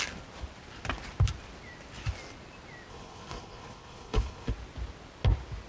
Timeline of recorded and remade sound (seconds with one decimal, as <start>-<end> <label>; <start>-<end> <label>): 0.0-2.9 recorded; 2.9-4.5 remade; 4.5-5.7 recorded